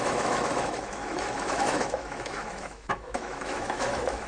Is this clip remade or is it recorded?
remade